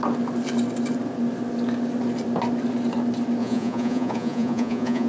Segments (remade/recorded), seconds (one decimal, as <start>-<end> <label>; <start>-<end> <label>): 0.0-3.4 recorded; 3.4-5.1 remade